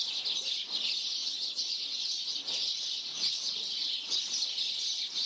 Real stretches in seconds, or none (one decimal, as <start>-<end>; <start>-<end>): 0.0-1.2; 4.2-5.3